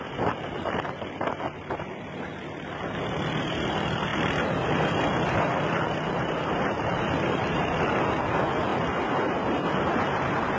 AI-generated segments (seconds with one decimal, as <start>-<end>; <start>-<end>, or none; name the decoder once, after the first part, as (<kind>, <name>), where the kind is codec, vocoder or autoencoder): 4.1-7.9 (vocoder, BigVGAN v2); 8.7-10.2